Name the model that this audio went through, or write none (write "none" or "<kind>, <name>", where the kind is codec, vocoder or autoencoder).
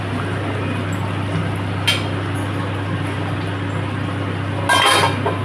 none